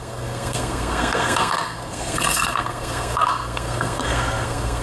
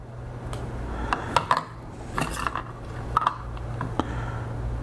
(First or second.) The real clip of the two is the second